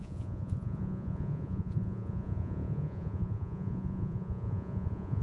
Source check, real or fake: fake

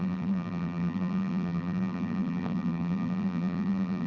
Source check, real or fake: fake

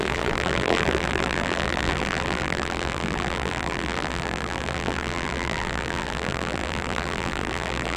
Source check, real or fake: fake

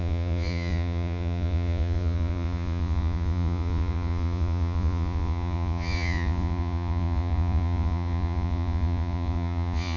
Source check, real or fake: fake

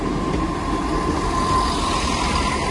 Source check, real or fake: real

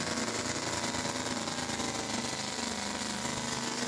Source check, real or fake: real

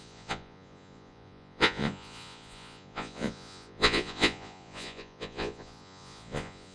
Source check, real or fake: fake